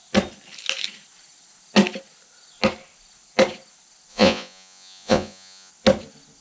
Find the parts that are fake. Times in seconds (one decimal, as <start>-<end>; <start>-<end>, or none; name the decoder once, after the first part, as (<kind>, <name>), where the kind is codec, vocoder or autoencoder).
4.1-5.7 (vocoder, Vocos)